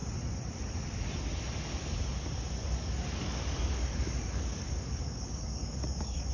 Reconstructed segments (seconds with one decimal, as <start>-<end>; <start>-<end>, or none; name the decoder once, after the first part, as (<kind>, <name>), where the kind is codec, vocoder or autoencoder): 2.6-6.3 (codec, DAC)

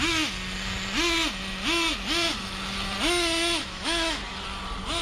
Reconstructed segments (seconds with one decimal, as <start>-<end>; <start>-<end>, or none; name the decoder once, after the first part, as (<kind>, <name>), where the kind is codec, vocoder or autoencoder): 3.6-4.2 (autoencoder, DAC-VAE)

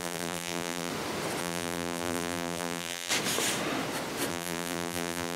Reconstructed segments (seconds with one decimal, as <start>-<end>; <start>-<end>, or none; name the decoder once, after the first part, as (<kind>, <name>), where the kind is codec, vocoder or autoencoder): 0.0-0.9 (vocoder, BigVGAN v2); 1.4-3.1; 4.3-5.4

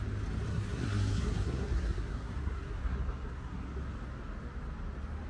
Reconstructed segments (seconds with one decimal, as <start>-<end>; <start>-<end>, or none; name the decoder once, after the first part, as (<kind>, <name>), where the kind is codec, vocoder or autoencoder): 0.5-3.7 (codec, SNAC)

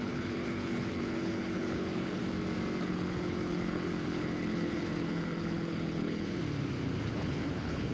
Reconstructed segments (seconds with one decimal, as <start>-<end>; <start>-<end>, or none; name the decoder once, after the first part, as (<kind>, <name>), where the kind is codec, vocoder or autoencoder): 0.0-2.2 (codec, HILCodec); 2.8-6.4; 7.1-7.9

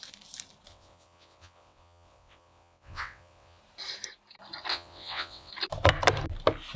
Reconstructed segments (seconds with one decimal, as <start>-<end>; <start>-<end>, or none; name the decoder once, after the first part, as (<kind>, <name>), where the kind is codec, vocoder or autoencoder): 0.7-3.6 (vocoder, WaveNeXt); 4.7-5.5